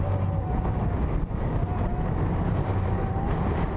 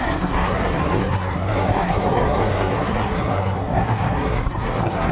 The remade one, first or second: second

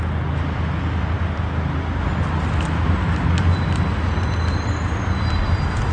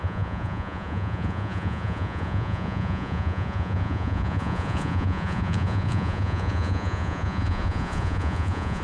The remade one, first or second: second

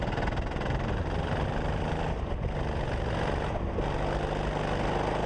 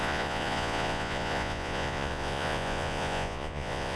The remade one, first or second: second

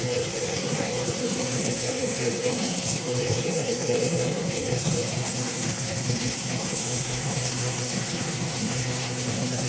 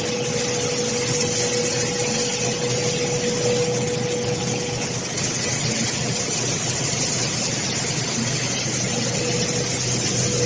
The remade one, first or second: first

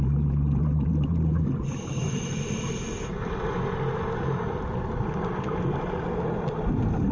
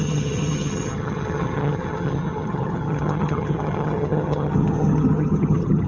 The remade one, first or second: second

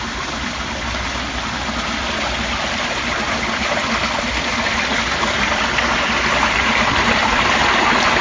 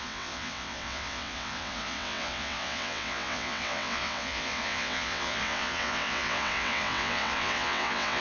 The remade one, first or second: second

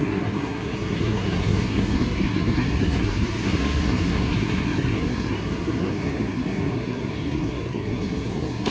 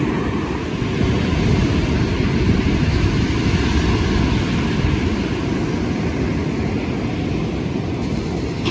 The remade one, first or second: first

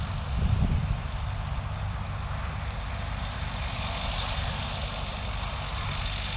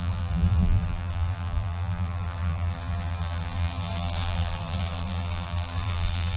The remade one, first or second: second